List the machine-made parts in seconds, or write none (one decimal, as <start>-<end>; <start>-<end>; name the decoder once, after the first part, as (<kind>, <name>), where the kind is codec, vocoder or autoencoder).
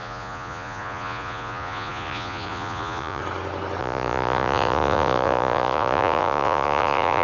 0.0-3.2 (vocoder, Vocos); 3.8-7.2